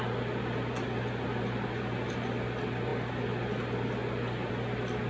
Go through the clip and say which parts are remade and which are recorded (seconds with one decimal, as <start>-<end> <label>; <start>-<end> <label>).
0.0-5.1 recorded